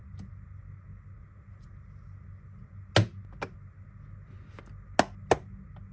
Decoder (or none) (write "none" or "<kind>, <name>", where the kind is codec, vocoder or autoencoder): none